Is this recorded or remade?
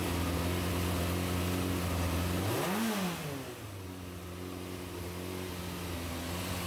recorded